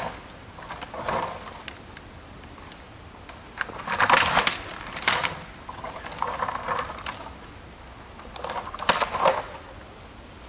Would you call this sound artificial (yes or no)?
no